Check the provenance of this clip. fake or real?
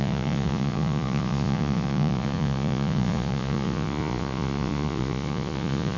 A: fake